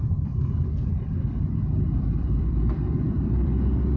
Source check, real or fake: fake